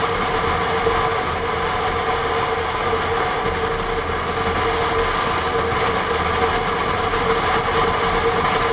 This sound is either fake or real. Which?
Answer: real